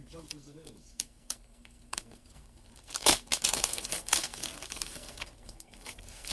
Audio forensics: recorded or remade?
remade